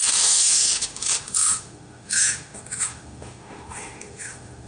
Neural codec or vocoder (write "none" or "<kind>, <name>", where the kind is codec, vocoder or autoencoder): autoencoder, DAC-VAE